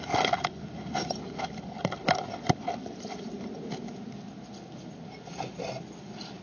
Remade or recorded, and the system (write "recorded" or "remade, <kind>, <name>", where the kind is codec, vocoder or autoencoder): recorded